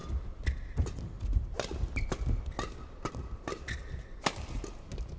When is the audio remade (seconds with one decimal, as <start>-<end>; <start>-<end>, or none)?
none